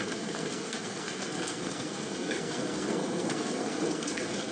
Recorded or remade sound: remade